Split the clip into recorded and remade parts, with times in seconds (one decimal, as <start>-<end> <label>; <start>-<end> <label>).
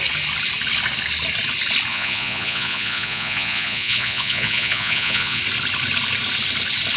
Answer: 0.0-1.9 recorded; 1.9-5.4 remade; 5.4-7.0 recorded